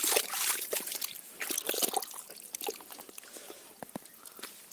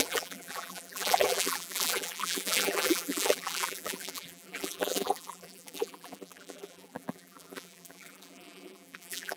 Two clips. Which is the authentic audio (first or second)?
first